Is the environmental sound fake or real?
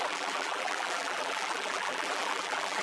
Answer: fake